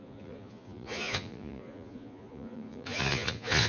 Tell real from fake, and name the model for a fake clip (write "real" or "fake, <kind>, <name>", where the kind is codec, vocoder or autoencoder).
fake, vocoder, Vocos